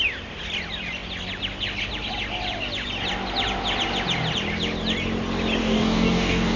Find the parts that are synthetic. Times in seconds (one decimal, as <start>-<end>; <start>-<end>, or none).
5.6-6.6